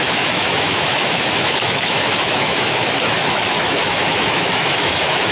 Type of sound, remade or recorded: remade